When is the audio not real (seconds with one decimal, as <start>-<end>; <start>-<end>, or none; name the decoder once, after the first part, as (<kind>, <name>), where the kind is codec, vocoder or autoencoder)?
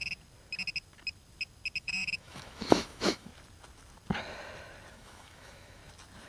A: 1.8-3.3 (autoencoder, DAC-VAE); 4.9-5.8